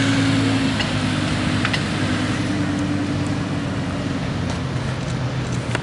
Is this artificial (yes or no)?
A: no